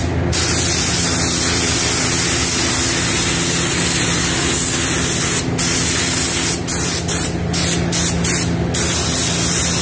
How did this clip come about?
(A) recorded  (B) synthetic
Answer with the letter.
A